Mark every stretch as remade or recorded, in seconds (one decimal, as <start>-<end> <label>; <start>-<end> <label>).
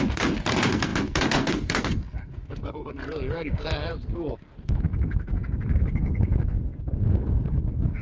0.0-8.0 remade